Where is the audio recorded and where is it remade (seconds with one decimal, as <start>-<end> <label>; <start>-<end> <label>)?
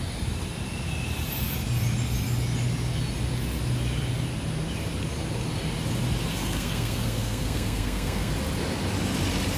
0.0-6.3 recorded; 6.3-8.3 remade; 8.3-9.6 recorded